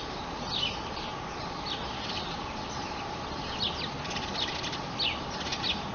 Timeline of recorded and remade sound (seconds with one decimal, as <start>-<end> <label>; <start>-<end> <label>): 0.0-5.9 recorded